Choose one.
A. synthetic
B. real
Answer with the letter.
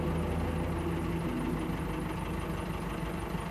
B